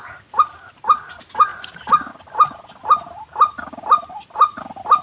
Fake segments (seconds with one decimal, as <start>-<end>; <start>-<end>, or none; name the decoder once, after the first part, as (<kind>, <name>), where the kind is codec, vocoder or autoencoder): none